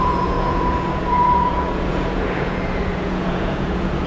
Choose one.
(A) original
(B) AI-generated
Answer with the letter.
B